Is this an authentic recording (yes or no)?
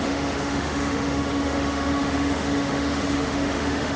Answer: no